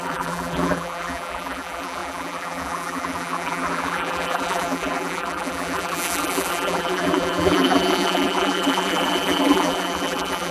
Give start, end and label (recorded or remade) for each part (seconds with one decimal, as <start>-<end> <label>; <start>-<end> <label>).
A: 0.0-10.5 remade